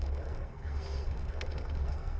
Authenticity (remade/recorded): remade